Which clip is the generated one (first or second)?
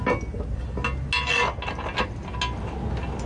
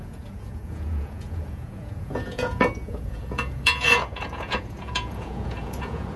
second